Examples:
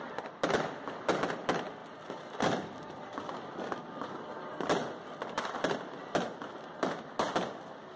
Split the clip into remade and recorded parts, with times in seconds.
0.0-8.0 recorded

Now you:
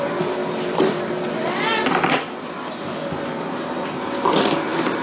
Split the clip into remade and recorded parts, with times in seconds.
0.0-5.0 recorded

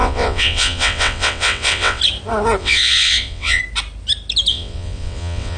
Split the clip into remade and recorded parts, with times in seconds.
0.0-2.0 remade; 2.0-2.6 recorded; 2.6-3.6 remade; 3.6-4.5 recorded; 4.5-5.6 remade

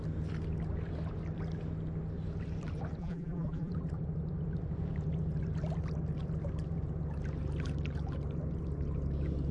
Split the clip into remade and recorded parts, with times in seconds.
0.0-3.0 recorded; 3.0-3.7 remade; 3.7-9.5 recorded

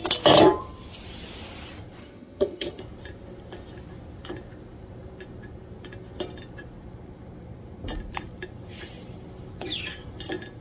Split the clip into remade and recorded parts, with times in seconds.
0.0-2.0 recorded; 2.0-2.8 remade; 2.8-10.6 recorded

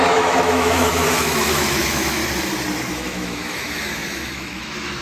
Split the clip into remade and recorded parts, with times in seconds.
0.0-2.2 remade; 2.2-2.9 recorded; 2.9-5.0 remade